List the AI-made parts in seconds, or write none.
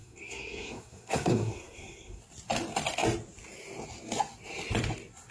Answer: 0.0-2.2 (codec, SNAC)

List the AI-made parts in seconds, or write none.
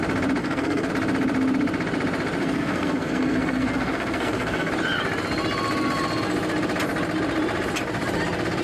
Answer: 0.4-0.9 (codec, SNAC); 2.4-4.7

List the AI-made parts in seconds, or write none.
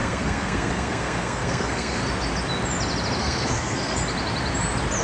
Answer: 0.0-2.0 (codec, SNAC); 3.2-4.0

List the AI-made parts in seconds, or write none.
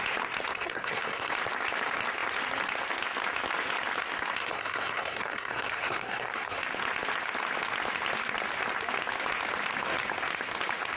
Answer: 0.5-1.3 (codec, SNAC); 4.4-6.6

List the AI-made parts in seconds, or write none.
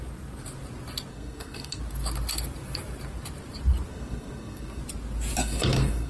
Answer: 1.1-1.8 (codec, SNAC); 3.9-4.8; 5.4-6.1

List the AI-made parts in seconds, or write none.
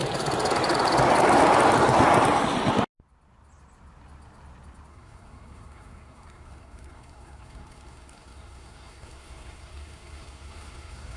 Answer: 4.9-11.2 (codec, SNAC)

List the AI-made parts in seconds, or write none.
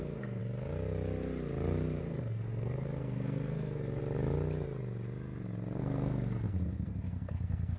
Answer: 0.0-0.4 (codec, SNAC); 2.0-4.0; 5.8-7.8